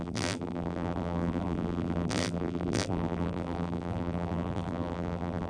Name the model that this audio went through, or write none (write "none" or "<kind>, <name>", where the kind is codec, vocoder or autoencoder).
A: vocoder, BigVGAN v2